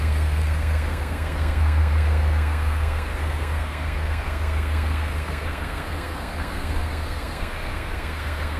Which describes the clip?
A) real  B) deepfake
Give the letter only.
B